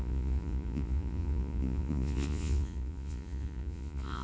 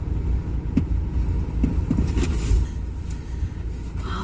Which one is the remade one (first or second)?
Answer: first